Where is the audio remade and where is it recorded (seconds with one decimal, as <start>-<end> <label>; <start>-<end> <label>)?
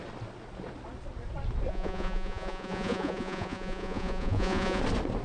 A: 0.0-1.7 recorded; 1.7-4.8 remade; 4.8-5.2 recorded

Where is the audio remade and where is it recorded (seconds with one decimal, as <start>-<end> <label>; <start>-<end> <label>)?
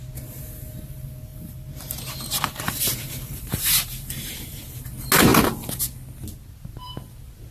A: 0.0-1.3 recorded; 1.3-4.6 remade; 4.6-7.5 recorded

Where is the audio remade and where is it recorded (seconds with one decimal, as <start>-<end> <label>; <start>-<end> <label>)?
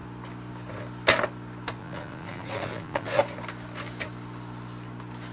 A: 0.0-1.8 recorded; 1.8-3.2 remade; 3.2-5.3 recorded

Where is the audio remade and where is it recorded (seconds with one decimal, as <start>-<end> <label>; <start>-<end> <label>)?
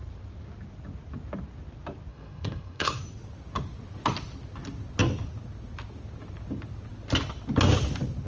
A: 0.0-2.1 recorded; 2.1-3.0 remade; 3.0-8.3 recorded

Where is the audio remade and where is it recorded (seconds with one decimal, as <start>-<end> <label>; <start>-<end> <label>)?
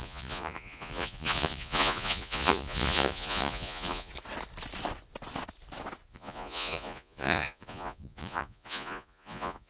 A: 0.0-4.1 remade; 4.1-6.1 recorded; 6.1-9.7 remade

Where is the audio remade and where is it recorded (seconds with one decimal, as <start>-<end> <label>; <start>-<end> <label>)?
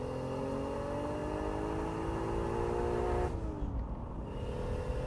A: 0.0-5.1 recorded